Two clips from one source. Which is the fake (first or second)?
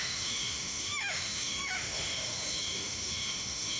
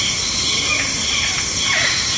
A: first